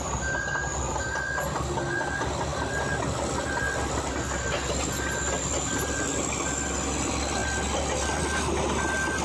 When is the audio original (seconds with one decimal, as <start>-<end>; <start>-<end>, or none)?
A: 0.0-9.2